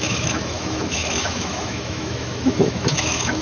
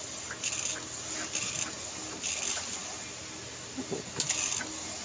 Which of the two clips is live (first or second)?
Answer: second